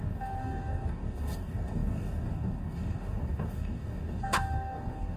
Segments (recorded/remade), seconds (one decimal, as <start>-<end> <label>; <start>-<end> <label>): 0.0-5.2 remade

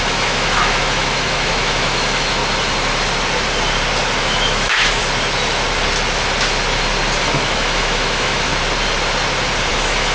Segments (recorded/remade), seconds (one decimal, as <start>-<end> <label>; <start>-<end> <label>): 0.0-2.4 remade; 2.4-4.2 recorded; 4.2-5.0 remade; 5.0-7.2 recorded; 7.2-8.5 remade; 8.5-9.7 recorded; 9.7-10.1 remade

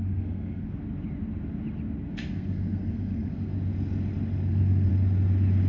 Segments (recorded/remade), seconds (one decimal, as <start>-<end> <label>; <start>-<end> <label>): 0.0-0.8 remade; 0.8-2.1 recorded; 2.1-3.5 remade; 3.5-4.5 recorded; 4.5-4.9 remade; 4.9-5.7 recorded

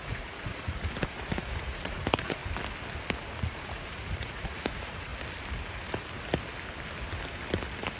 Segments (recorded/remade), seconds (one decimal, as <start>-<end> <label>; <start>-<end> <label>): 0.0-2.4 remade; 2.4-3.2 recorded; 3.2-5.1 remade; 5.1-8.0 recorded